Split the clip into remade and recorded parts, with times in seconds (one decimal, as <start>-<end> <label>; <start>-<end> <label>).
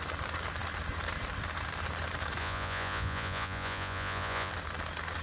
0.0-2.4 recorded; 2.4-4.5 remade; 4.5-5.2 recorded